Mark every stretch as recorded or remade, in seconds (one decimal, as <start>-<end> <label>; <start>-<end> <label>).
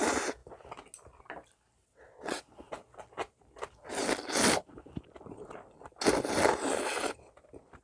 0.0-1.8 recorded; 1.8-2.4 remade; 2.4-7.8 recorded